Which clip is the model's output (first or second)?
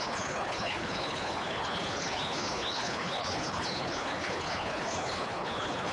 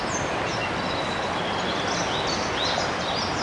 first